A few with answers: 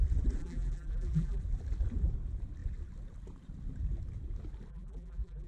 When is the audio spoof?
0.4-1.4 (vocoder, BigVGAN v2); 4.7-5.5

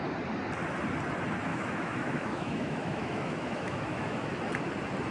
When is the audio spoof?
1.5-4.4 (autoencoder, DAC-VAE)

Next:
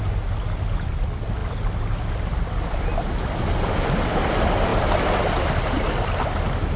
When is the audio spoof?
none